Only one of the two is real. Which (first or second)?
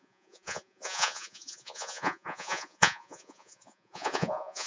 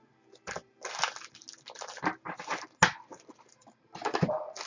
second